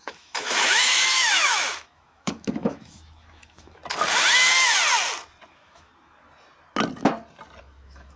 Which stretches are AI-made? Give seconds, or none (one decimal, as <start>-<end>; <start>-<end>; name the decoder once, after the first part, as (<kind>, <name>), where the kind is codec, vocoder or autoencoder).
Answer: 0.0-3.8 (autoencoder, DAC-VAE); 5.5-5.9; 7.6-8.2